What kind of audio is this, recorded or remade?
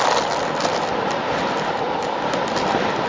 recorded